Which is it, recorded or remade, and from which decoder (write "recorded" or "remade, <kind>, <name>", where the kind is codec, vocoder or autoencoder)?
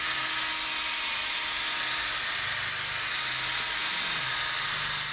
recorded